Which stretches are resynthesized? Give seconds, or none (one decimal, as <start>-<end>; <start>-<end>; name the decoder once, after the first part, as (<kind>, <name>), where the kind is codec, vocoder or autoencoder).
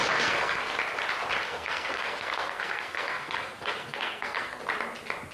0.0-0.7 (codec, SNAC); 1.4-4.6